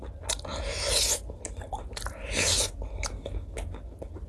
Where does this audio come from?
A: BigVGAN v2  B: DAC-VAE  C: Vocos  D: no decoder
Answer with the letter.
D